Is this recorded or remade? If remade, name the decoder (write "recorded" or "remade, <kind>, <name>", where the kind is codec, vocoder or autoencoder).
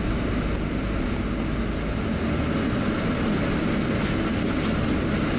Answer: recorded